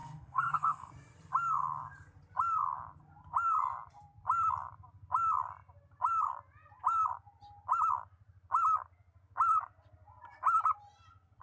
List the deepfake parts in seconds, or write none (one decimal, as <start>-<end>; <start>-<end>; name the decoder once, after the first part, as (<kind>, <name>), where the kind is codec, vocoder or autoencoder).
0.0-0.9 (codec, SNAC)